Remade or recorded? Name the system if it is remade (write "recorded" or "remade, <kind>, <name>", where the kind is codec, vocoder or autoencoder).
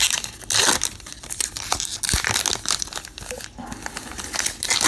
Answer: recorded